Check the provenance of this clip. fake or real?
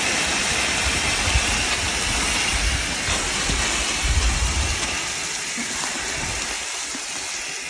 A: real